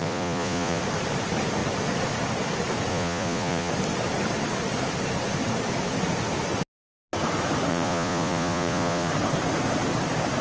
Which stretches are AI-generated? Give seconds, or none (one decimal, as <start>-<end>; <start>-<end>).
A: 0.0-0.8; 2.9-3.7; 7.7-9.1